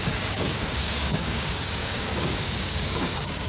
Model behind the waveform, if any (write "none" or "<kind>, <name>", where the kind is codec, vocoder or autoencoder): codec, DAC